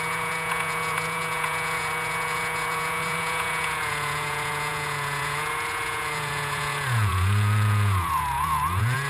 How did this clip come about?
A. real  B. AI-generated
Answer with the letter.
B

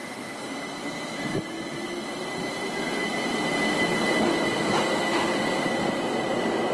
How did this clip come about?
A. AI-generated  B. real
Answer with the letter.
B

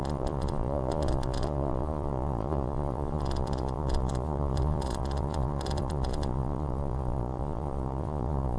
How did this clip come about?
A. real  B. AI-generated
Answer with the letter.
B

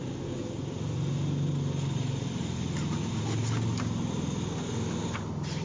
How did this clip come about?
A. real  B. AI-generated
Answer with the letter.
A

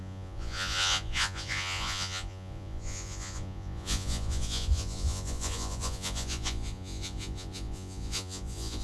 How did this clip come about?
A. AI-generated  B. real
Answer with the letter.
A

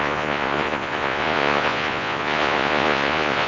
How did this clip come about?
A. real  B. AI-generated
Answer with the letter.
B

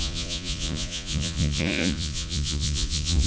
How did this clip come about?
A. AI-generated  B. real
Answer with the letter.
A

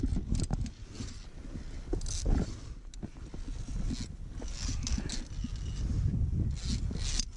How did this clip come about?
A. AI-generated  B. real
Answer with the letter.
B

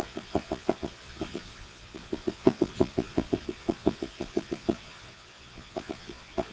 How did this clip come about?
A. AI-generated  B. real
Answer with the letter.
A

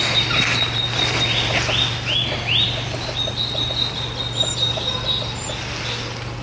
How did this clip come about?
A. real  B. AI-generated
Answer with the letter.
A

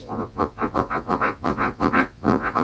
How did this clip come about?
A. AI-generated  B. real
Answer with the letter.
A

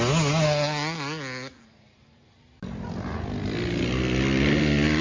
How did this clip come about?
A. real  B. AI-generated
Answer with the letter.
A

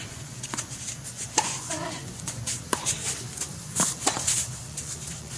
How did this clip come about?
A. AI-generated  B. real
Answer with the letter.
A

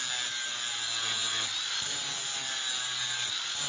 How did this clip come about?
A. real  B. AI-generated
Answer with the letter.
A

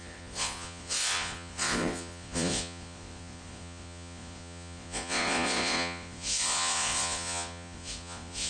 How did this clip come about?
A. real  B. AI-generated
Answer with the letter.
B